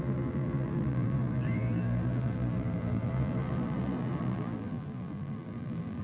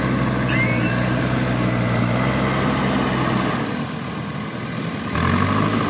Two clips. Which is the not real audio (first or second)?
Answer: first